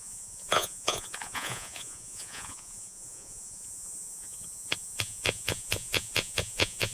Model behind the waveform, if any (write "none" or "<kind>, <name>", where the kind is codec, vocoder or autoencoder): vocoder, Vocos